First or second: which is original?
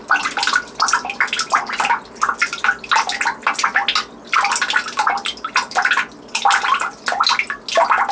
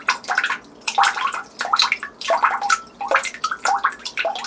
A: first